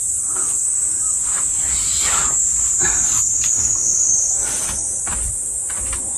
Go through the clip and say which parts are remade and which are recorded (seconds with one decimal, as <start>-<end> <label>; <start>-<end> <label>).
0.0-0.4 recorded; 0.4-1.0 remade; 1.0-3.6 recorded; 3.6-4.3 remade; 4.3-6.2 recorded